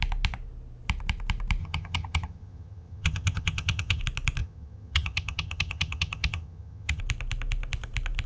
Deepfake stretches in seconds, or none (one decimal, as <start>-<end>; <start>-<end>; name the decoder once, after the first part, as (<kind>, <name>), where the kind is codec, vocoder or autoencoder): 1.6-4.0 (vocoder, HiFi-GAN); 4.4-7.0